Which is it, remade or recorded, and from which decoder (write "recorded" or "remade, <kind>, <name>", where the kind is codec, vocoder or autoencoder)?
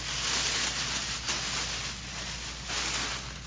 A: recorded